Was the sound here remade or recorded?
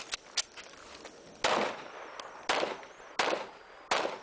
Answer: recorded